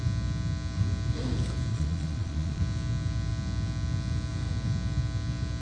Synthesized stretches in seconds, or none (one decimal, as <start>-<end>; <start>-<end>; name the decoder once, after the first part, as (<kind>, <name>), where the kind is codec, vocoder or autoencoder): 1.7-2.6 (vocoder, Vocos)